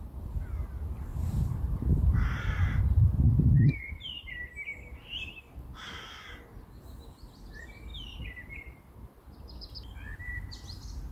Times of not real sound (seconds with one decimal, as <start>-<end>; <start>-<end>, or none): 1.1-3.2